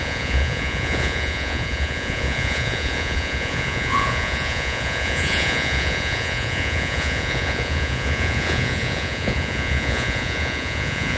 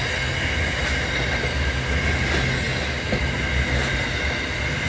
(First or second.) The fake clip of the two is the first